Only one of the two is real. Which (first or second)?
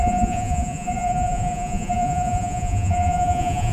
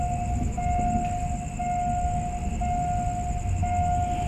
second